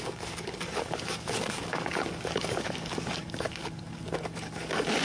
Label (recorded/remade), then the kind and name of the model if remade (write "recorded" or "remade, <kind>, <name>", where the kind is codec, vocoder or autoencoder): remade, codec, DAC